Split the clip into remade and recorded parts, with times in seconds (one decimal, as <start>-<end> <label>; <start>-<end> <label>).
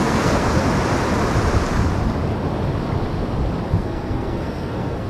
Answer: 0.0-0.6 remade; 0.6-3.7 recorded; 3.7-5.1 remade